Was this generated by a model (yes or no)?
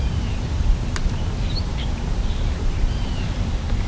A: yes